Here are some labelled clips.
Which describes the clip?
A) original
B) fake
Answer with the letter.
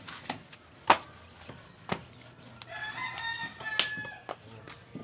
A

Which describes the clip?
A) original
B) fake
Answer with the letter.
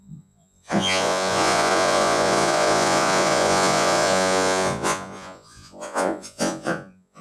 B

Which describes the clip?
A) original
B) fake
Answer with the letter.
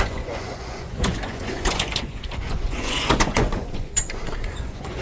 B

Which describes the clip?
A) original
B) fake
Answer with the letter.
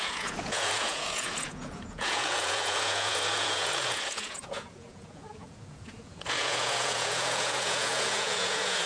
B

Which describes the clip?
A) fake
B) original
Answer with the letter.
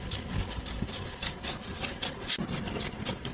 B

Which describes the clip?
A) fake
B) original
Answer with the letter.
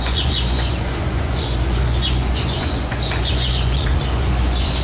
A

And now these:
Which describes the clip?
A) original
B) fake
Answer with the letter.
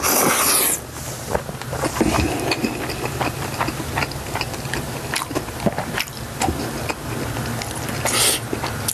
A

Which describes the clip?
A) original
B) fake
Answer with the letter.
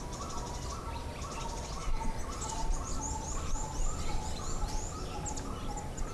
A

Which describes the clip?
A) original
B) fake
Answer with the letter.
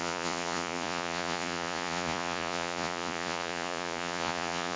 B